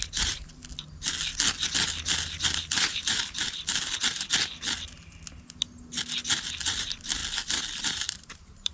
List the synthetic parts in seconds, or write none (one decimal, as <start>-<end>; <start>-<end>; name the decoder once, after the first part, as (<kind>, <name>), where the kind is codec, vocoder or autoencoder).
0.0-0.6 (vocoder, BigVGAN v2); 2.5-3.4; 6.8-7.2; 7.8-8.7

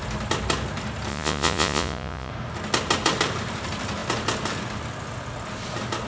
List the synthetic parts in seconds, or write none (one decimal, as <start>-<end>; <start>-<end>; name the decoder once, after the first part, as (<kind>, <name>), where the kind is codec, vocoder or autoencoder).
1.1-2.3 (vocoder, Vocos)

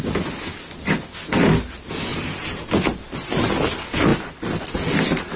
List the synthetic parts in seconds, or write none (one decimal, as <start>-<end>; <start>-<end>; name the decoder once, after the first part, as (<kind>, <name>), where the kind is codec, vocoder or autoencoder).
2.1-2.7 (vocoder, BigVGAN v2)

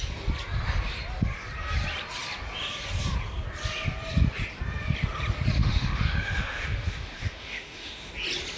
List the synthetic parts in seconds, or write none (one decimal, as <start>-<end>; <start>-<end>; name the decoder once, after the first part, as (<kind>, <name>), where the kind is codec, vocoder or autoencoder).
5.6-8.1 (autoencoder, DAC-VAE)